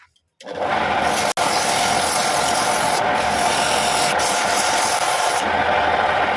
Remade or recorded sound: recorded